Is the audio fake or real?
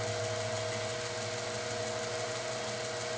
real